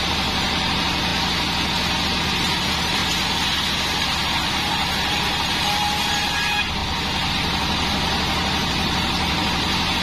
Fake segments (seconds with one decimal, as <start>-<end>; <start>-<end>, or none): 0.0-1.1; 2.2-3.0; 4.5-6.8; 7.3-10.0

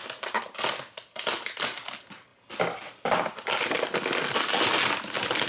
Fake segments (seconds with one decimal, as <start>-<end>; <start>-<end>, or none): none

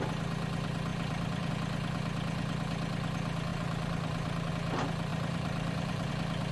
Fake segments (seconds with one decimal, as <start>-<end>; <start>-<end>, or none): 0.9-1.5; 3.5-4.5; 5.1-6.1

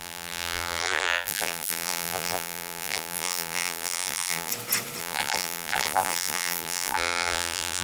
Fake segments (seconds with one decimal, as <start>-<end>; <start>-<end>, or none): 0.0-4.5; 5.0-7.8

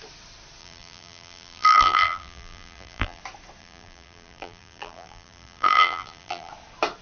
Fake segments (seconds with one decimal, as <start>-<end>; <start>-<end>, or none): 0.6-3.2; 3.6-6.5

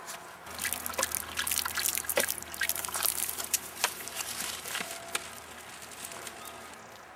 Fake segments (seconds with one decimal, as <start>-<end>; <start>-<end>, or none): 1.9-4.9

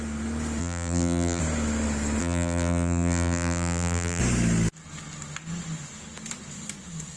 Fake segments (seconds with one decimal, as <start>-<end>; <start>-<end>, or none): 0.6-1.4; 2.2-4.2

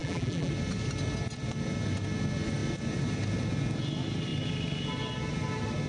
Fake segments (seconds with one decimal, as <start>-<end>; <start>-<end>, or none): 0.0-0.5